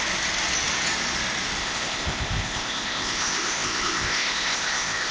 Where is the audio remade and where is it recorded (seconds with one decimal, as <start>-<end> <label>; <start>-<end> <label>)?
0.0-1.6 recorded; 1.6-5.1 remade